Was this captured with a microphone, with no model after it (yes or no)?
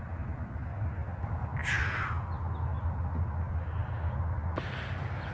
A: yes